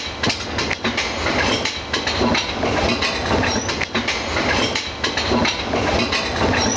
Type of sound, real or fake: real